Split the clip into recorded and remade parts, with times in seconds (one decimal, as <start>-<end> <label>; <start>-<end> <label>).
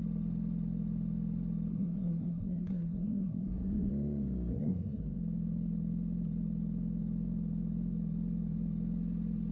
0.0-1.7 recorded; 1.7-3.9 remade; 3.9-4.5 recorded; 4.5-5.0 remade; 5.0-9.5 recorded